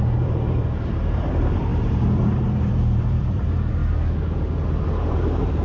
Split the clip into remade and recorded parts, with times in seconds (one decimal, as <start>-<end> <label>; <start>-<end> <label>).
0.0-3.8 remade; 3.8-5.0 recorded; 5.0-5.6 remade